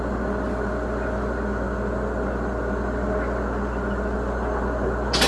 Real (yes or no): yes